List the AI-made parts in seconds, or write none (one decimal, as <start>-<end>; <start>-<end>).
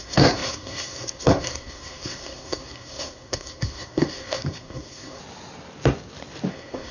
0.0-5.2; 6.5-6.9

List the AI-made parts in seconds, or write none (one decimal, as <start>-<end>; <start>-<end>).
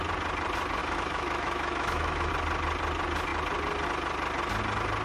0.8-2.3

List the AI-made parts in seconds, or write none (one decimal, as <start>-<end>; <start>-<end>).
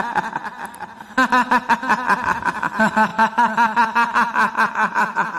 none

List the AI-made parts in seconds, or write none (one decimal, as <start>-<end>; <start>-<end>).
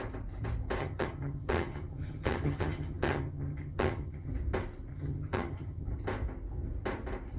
0.8-4.3; 4.9-5.9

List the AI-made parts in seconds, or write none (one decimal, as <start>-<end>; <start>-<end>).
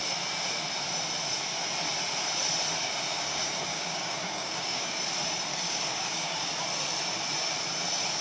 3.1-5.0; 5.5-6.5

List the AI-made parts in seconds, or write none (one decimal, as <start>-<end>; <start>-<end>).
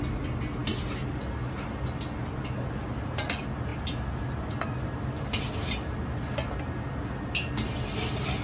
none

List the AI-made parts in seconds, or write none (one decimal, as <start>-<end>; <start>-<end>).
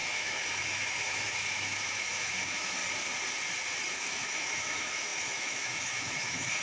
0.0-2.8; 3.9-6.6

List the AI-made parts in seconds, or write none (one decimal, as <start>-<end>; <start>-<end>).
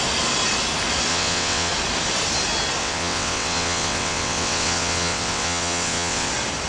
1.1-1.7; 2.8-6.3